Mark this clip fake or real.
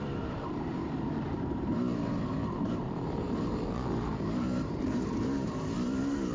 fake